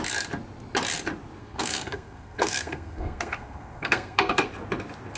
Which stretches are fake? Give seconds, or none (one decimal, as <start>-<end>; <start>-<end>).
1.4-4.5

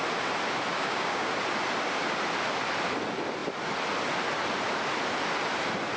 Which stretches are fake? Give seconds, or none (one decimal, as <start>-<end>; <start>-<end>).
0.7-1.3

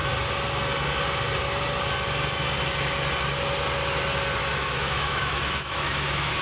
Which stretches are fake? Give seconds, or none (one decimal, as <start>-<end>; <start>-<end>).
4.4-6.4

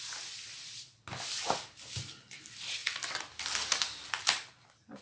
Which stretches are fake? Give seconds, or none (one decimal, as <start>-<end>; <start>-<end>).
none

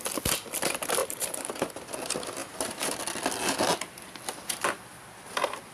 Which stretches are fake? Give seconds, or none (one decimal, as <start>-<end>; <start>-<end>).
1.0-1.8; 2.4-3.0

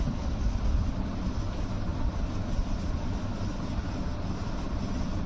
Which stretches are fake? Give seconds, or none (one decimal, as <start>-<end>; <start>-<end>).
none

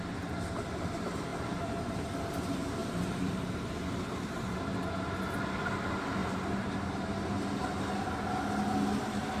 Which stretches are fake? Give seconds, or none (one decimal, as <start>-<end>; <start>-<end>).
2.8-3.7; 6.2-6.7

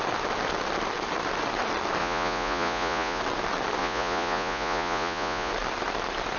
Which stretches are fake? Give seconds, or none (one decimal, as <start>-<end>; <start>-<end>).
2.0-3.2; 3.8-5.5